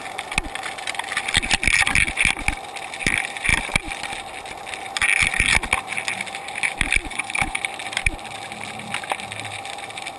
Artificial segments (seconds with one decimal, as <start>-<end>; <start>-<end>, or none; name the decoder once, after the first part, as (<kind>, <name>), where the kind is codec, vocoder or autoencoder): 7.1-7.6 (codec, HILCodec)